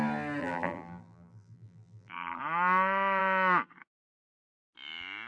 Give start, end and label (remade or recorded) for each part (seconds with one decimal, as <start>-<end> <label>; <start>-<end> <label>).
0.0-0.4 recorded; 0.4-2.4 remade; 2.4-5.3 recorded